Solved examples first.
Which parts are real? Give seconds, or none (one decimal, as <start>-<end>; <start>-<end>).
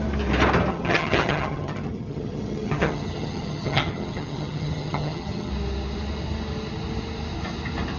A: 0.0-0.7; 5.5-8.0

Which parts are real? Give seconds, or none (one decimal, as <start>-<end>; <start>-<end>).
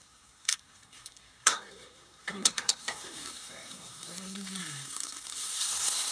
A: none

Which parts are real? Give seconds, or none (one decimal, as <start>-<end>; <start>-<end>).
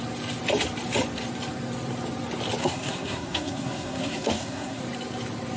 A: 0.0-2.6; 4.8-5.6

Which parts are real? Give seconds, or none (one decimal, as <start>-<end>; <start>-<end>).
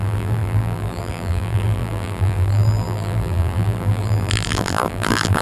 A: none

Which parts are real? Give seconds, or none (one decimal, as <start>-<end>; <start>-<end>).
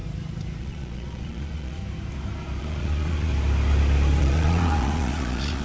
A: 0.0-0.6; 1.8-2.6; 3.3-4.2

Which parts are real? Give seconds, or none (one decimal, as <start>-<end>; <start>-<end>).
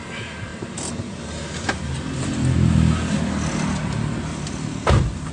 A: 0.0-5.3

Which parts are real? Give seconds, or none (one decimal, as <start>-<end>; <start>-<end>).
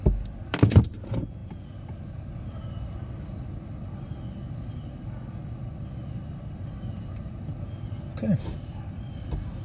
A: 0.0-9.6